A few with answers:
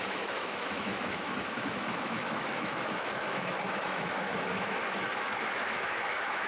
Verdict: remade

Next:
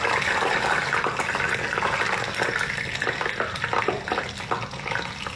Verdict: recorded